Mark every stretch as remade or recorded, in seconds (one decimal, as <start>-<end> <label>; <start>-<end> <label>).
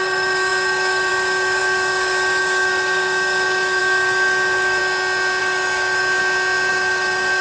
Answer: 0.0-4.8 remade; 4.8-5.4 recorded; 5.4-6.2 remade; 6.2-6.7 recorded; 6.7-7.4 remade